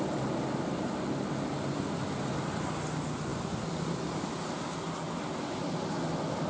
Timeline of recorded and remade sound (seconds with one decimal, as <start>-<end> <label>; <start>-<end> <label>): 0.0-6.5 recorded